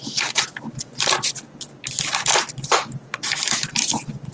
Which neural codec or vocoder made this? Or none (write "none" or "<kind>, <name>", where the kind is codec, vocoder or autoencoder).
none